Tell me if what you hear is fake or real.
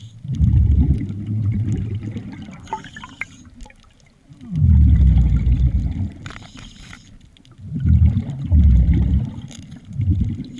real